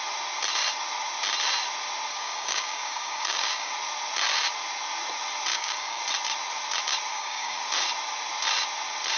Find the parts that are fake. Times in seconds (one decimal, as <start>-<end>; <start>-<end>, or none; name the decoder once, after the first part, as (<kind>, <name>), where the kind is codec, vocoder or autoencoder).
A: 2.1-3.7 (codec, DAC); 5.5-6.0; 7.1-7.6